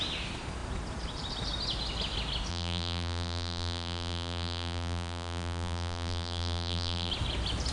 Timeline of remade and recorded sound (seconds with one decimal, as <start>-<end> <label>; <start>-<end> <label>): 0.0-2.5 recorded; 2.5-7.1 remade; 7.1-7.7 recorded